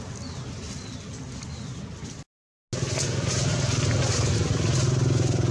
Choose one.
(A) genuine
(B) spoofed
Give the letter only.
A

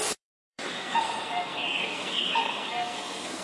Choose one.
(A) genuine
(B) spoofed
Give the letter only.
B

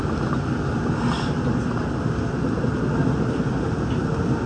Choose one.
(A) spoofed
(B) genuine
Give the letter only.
B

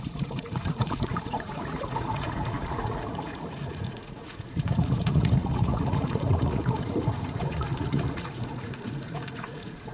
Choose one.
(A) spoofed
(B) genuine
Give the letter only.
A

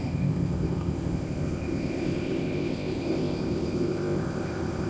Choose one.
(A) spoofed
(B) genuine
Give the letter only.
A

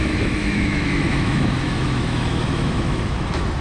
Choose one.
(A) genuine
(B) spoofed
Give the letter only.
B